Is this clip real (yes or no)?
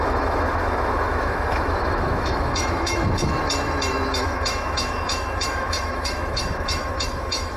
no